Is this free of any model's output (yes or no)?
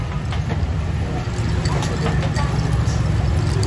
yes